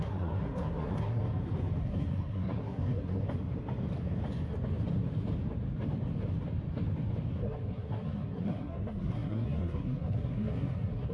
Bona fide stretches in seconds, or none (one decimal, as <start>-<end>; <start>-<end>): 1.2-1.8; 3.2-7.4